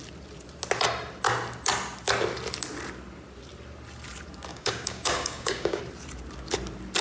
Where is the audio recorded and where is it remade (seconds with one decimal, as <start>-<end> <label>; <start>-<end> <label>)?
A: 0.0-4.5 recorded; 4.5-5.8 remade; 5.8-7.0 recorded